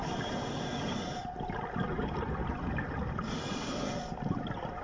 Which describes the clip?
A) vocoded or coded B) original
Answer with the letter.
B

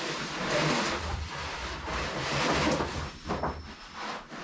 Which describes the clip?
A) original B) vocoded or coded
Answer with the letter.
A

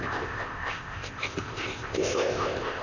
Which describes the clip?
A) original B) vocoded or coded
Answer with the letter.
B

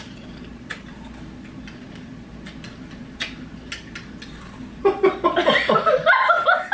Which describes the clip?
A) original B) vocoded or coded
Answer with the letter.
A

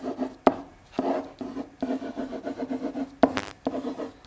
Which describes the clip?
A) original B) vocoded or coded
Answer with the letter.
A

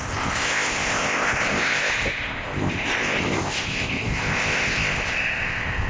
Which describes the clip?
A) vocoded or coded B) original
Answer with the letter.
A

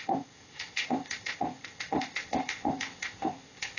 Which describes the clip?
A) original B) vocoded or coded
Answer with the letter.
B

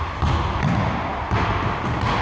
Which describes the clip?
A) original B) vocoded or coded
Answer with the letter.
A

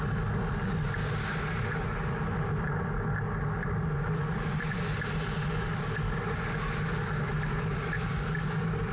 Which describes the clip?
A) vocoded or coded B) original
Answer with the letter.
B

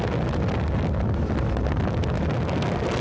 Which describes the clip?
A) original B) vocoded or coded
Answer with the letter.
A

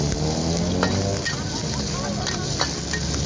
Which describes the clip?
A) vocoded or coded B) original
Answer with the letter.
B